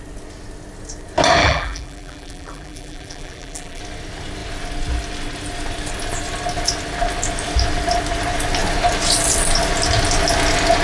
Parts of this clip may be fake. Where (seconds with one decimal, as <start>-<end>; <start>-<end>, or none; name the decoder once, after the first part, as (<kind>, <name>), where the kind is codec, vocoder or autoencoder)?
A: 1.4-3.8 (vocoder, BigVGAN v2)